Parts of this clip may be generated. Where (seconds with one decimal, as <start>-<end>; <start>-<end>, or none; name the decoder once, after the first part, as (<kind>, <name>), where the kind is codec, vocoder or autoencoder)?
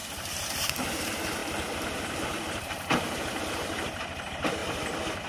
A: 0.0-4.6 (vocoder, BigVGAN v2)